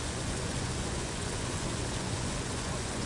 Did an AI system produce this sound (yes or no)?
yes